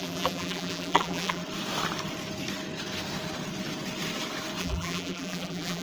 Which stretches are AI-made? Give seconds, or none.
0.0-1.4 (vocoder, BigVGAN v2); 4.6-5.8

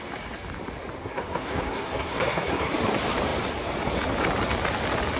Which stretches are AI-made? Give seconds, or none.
1.0-2.7 (codec, SNAC)

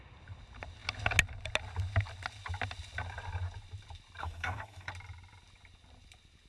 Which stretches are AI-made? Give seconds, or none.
4.2-4.9 (codec, DAC)

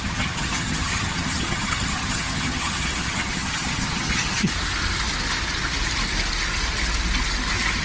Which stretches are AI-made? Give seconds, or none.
0.0-4.4 (vocoder, HiFi-GAN)

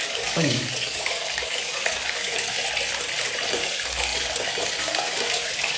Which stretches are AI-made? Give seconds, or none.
0.0-2.6 (codec, DAC); 3.5-5.8